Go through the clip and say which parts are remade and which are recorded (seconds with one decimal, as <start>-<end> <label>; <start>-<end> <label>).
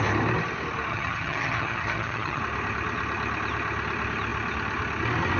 0.0-0.9 recorded; 0.9-2.4 remade; 2.4-5.4 recorded